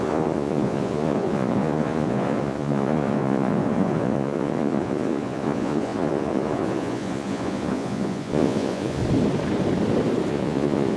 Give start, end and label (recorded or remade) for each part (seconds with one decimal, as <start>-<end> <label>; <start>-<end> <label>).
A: 0.0-9.0 remade; 9.0-10.3 recorded; 10.3-11.0 remade